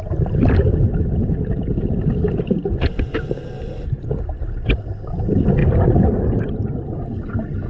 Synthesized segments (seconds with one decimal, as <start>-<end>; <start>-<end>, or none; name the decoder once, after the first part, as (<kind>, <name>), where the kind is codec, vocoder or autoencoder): none